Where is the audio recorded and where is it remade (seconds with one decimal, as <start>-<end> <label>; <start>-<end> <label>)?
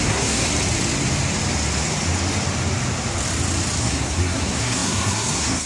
0.0-0.5 remade; 0.5-3.8 recorded; 3.8-5.7 remade